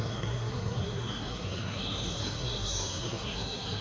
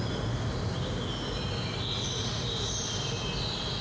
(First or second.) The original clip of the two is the second